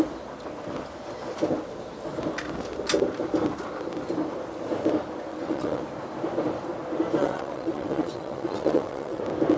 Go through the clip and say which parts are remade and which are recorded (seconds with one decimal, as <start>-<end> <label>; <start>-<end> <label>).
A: 0.0-5.3 recorded; 5.3-5.8 remade; 5.8-7.2 recorded; 7.2-9.2 remade; 9.2-9.6 recorded